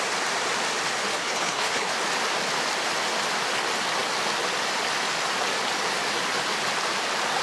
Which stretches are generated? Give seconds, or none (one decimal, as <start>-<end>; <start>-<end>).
1.1-1.9